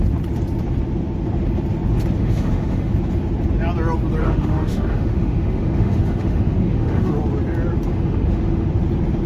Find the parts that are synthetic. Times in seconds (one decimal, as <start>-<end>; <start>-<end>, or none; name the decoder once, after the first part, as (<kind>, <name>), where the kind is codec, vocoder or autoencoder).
2.2-2.9 (autoencoder, DAC-VAE); 4.2-7.1; 7.9-8.7